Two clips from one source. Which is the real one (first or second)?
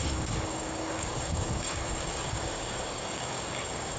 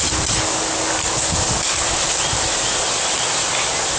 second